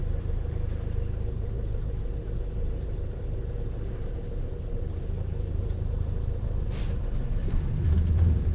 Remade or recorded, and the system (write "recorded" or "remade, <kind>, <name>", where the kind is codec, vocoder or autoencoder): remade, vocoder, BigVGAN v2